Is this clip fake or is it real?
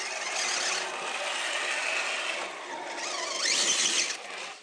real